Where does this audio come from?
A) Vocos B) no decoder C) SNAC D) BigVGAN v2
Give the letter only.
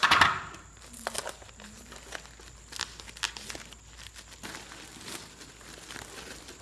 B